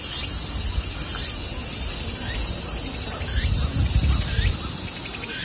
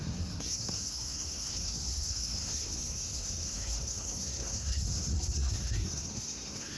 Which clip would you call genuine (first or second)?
first